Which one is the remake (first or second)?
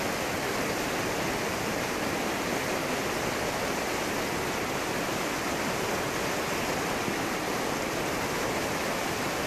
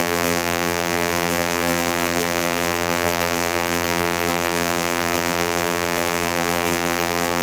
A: second